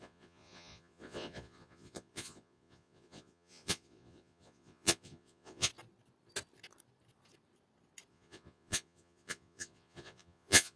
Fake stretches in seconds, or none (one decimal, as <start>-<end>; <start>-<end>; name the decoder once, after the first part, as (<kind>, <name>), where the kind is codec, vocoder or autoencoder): 0.0-5.7 (vocoder, Vocos); 8.1-10.8